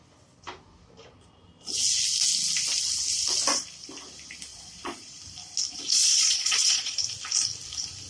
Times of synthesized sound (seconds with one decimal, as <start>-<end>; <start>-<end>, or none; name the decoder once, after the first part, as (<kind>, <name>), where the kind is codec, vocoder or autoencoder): 4.5-5.2 (vocoder, Vocos); 5.9-7.0